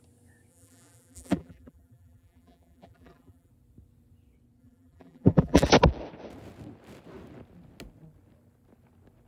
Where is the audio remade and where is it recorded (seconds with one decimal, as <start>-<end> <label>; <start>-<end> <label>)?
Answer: 0.0-0.5 recorded; 0.5-3.5 remade; 3.5-4.6 recorded; 4.6-5.6 remade; 5.6-9.3 recorded